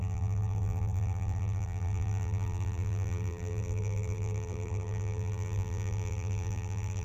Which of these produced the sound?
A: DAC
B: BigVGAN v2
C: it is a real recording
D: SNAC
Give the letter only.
B